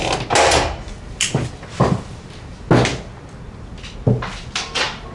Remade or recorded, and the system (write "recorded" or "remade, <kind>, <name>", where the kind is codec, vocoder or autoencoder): recorded